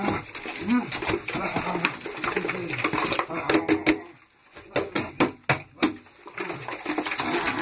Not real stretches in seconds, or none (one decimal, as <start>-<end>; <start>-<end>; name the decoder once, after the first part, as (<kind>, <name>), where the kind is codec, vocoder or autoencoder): 4.4-5.1 (vocoder, Vocos)